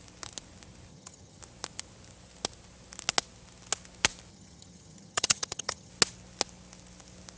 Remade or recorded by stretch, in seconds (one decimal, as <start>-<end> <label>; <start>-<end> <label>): 0.0-0.9 recorded; 0.9-1.4 remade; 1.4-4.3 recorded; 4.3-5.9 remade; 5.9-7.4 recorded